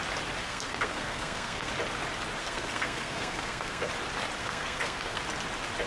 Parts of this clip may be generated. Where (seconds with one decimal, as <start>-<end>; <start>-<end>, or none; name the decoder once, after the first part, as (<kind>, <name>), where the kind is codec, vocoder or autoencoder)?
0.4-1.7 (codec, SNAC); 2.4-3.9; 4.4-5.2